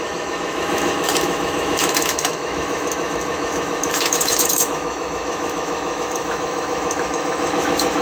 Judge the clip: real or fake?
fake